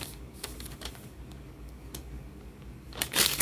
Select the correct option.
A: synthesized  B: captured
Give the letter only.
A